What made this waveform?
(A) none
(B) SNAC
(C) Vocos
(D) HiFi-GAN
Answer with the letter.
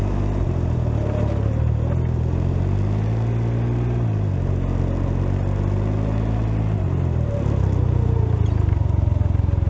A